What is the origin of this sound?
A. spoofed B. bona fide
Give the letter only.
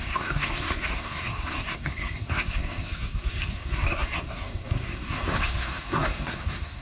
A